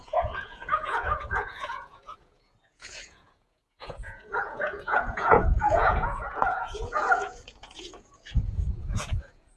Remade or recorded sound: remade